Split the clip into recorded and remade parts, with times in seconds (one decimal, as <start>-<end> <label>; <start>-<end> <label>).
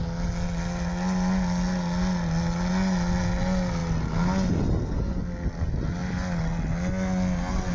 0.0-7.7 recorded